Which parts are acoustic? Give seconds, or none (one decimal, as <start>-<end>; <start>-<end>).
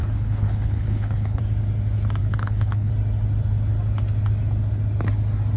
1.4-2.2; 2.9-5.6